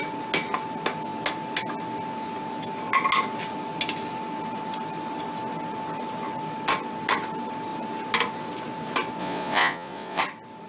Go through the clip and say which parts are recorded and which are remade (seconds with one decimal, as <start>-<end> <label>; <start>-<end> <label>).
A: 0.0-9.2 recorded; 9.2-10.2 remade; 10.2-10.7 recorded

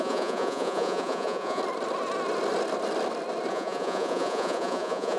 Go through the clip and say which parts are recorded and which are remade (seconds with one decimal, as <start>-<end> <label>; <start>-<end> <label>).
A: 0.0-1.6 remade; 1.6-3.5 recorded; 3.5-5.2 remade

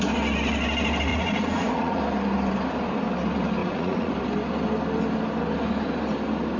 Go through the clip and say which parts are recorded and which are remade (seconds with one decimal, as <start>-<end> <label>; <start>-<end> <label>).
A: 0.0-1.1 recorded; 1.1-2.0 remade; 2.0-3.6 recorded; 3.6-4.1 remade; 4.1-6.6 recorded

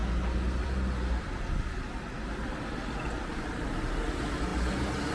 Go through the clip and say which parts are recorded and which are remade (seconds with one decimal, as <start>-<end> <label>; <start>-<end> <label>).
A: 0.0-5.1 recorded

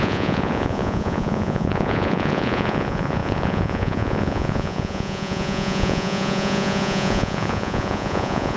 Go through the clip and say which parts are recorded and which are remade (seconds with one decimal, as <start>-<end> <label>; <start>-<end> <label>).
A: 0.0-8.6 remade

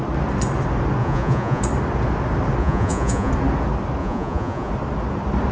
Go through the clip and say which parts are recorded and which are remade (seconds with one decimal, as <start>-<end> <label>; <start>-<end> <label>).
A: 0.0-1.0 recorded; 1.0-1.6 remade; 1.6-2.6 recorded; 2.6-3.3 remade; 3.3-4.0 recorded; 4.0-4.7 remade; 4.7-5.5 recorded

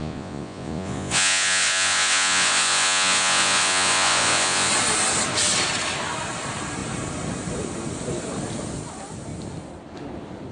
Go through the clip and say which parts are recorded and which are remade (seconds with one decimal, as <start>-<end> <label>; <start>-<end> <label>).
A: 0.0-4.7 remade; 4.7-10.5 recorded